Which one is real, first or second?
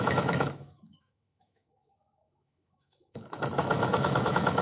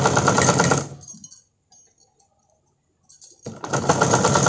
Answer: second